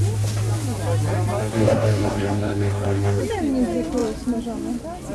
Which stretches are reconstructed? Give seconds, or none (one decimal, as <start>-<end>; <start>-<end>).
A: 1.4-3.2